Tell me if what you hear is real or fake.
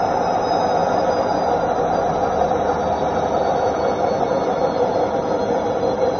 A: real